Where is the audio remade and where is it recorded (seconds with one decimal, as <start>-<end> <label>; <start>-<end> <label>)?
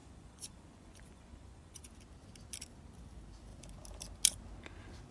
0.0-1.9 remade; 1.9-5.1 recorded